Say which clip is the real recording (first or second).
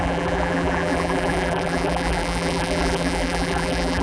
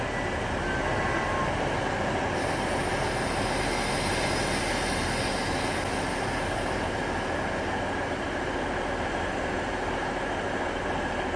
second